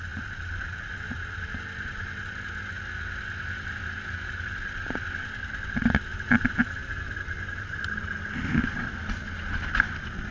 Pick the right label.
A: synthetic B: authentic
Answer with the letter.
B